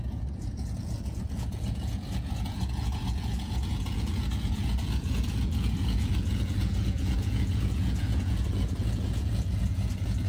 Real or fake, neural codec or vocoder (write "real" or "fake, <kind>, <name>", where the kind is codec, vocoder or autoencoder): fake, vocoder, Vocos